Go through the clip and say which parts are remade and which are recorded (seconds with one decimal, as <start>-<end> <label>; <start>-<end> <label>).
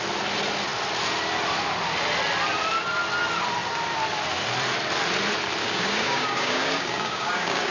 0.0-5.6 recorded; 5.6-7.7 remade